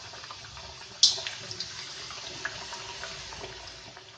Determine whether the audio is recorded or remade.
recorded